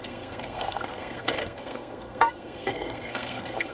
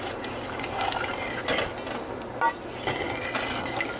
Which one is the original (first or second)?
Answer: second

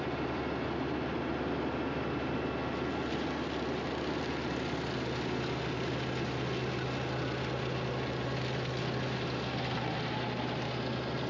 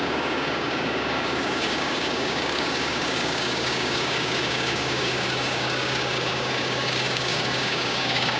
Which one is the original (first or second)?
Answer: first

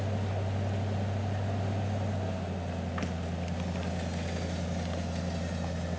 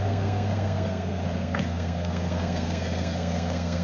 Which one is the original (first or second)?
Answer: first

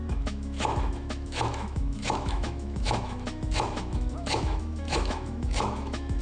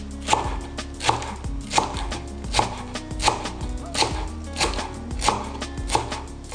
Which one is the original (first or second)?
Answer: second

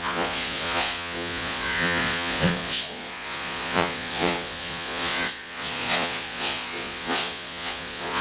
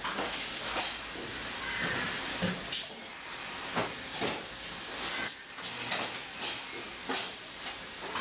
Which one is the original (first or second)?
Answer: second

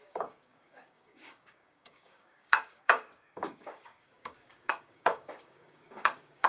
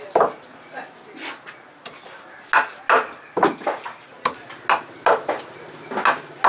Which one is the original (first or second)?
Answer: second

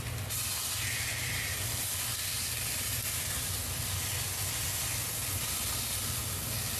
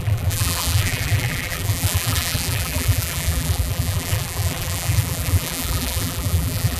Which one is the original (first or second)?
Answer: first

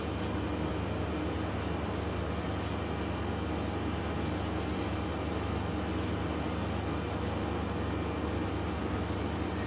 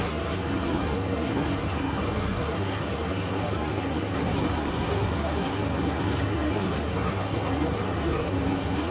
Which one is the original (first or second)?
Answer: first